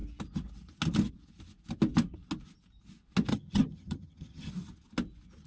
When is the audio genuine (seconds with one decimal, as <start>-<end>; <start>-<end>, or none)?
0.0-3.3; 4.5-5.5